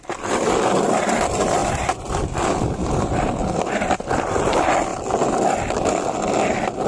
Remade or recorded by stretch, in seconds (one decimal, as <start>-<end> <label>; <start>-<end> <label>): 0.0-4.9 remade; 4.9-6.1 recorded; 6.1-6.9 remade